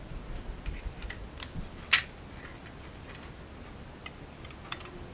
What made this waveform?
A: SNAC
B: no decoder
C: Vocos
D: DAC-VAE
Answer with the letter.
B